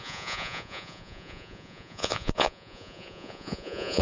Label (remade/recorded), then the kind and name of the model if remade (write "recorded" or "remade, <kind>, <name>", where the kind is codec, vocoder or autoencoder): remade, vocoder, Vocos